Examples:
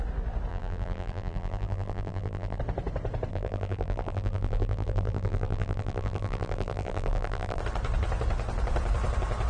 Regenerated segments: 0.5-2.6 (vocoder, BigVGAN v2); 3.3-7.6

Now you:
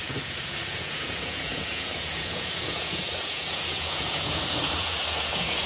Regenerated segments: 0.0-5.7 (vocoder, Vocos)

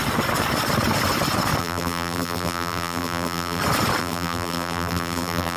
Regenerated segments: 1.6-3.6 (vocoder, BigVGAN v2); 4.0-5.6

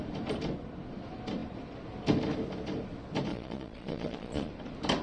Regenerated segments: 3.3-4.5 (vocoder, Vocos)

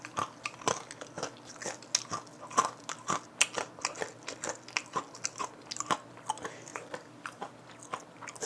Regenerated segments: 6.7-7.5 (vocoder, BigVGAN v2)

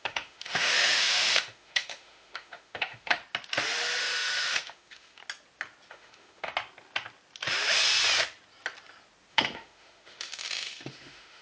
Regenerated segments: 0.0-3.2 (autoencoder, DAC-VAE); 4.0-5.2; 5.9-6.5; 9.3-11.4

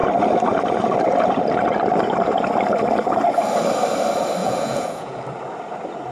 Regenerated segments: 4.4-5.2 (vocoder, Vocos)